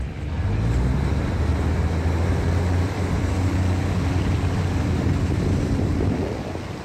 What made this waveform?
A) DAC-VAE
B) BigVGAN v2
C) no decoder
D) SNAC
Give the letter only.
B